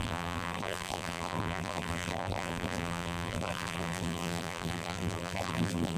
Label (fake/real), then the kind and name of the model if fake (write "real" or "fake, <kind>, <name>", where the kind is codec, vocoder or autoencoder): fake, vocoder, BigVGAN v2